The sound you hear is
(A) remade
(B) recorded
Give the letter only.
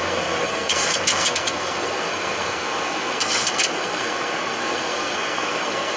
A